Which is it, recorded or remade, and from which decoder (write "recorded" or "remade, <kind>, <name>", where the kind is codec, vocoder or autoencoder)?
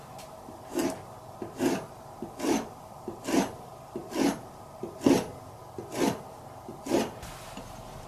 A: recorded